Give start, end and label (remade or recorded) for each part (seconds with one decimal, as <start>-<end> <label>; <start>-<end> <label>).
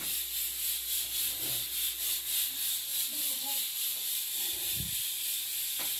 0.0-2.9 recorded; 2.9-5.4 remade; 5.4-6.0 recorded